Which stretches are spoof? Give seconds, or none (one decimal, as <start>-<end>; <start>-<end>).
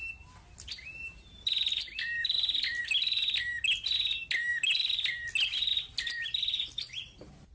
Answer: 0.9-2.8; 4.5-7.5